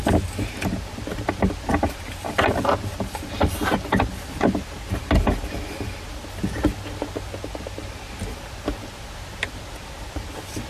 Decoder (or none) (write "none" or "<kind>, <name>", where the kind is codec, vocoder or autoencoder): none